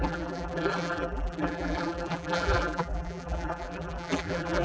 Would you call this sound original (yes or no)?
no